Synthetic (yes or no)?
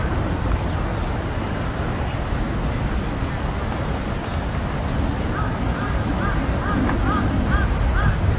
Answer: no